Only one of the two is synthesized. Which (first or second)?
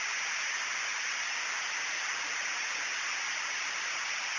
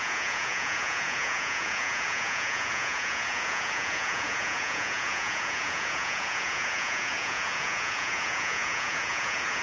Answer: second